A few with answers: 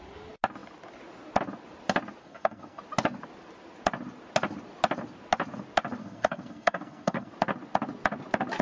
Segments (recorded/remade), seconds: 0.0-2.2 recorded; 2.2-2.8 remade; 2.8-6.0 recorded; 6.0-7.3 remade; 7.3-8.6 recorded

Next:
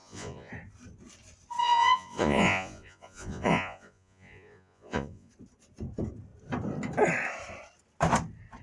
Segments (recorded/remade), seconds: 0.0-0.5 remade; 0.5-1.6 recorded; 1.6-5.3 remade; 5.3-8.6 recorded